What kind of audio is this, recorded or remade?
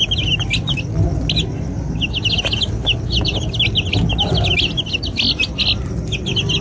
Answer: recorded